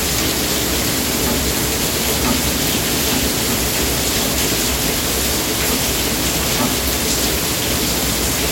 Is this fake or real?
real